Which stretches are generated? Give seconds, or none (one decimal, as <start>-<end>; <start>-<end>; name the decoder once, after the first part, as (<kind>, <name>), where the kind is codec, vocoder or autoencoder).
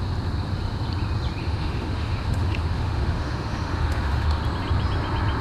1.4-4.4 (autoencoder, DAC-VAE)